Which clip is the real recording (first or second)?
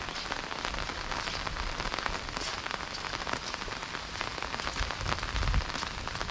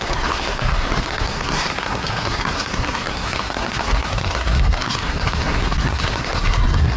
first